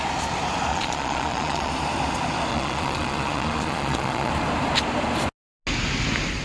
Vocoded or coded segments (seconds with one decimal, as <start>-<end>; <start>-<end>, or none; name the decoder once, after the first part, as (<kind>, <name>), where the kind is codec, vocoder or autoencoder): 0.7-1.7 (vocoder, Vocos); 2.5-4.3